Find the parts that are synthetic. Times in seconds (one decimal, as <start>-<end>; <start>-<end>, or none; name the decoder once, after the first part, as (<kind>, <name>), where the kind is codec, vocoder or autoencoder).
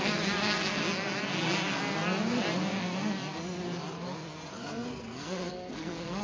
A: 0.0-0.8 (codec, SNAC); 4.5-6.2